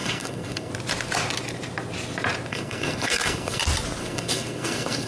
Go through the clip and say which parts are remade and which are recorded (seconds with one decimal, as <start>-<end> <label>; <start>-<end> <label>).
0.0-0.7 remade; 0.7-2.5 recorded; 2.5-3.6 remade; 3.6-4.0 recorded; 4.0-5.1 remade